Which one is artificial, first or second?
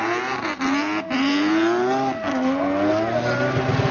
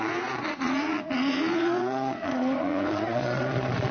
second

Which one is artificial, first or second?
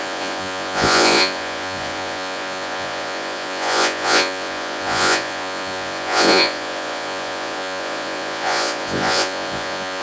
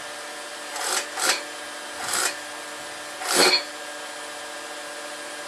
first